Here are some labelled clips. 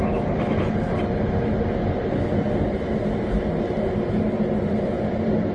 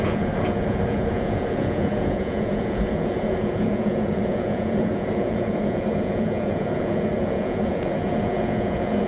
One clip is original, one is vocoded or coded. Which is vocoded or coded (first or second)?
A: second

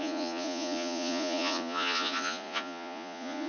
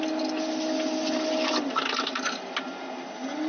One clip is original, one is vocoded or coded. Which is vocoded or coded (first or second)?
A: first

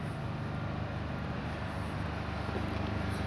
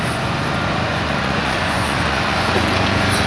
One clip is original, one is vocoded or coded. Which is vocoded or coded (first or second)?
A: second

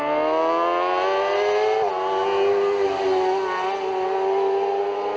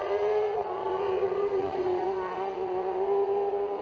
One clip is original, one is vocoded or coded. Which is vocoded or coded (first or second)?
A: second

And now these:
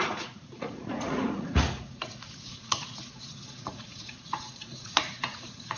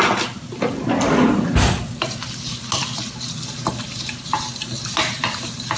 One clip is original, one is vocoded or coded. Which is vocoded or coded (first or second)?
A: first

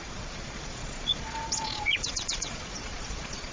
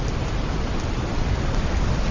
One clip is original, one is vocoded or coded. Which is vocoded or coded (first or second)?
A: first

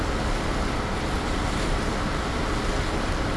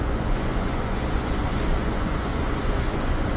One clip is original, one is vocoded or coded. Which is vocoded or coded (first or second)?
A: second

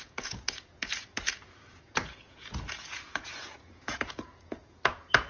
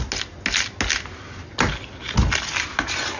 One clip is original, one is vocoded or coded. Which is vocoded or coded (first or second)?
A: first